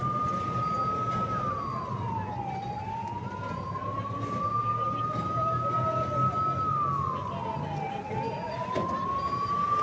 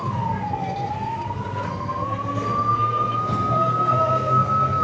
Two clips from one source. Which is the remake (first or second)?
second